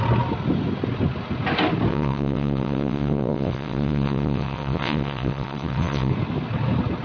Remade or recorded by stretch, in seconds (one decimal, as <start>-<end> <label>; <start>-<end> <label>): 0.0-1.9 recorded; 1.9-6.1 remade; 6.1-7.0 recorded

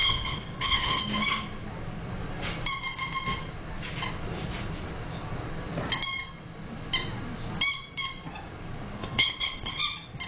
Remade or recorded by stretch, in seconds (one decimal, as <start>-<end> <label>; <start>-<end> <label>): 0.0-1.0 remade; 1.0-9.0 recorded; 9.0-9.8 remade; 9.8-10.3 recorded

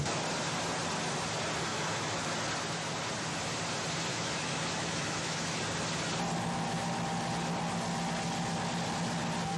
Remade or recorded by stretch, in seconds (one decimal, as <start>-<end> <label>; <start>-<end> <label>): 0.0-1.7 recorded; 1.7-2.3 remade; 2.3-4.1 recorded; 4.1-5.6 remade; 5.6-9.6 recorded

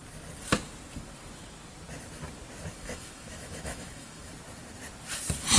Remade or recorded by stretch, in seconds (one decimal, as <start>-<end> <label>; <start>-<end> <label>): 0.0-2.7 recorded; 2.7-4.3 remade; 4.3-5.6 recorded

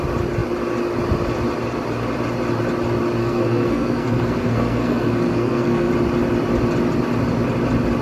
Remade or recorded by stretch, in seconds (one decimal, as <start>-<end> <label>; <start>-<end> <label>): 0.0-3.2 recorded; 3.2-5.9 remade; 5.9-8.0 recorded

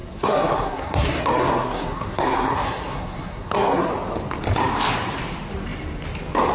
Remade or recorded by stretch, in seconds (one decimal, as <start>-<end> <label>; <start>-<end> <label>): 0.0-3.9 remade; 3.9-6.5 recorded